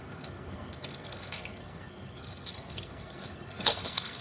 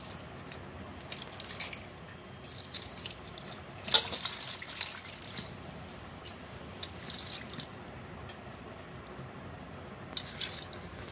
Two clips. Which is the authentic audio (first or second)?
second